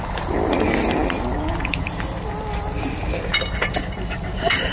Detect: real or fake real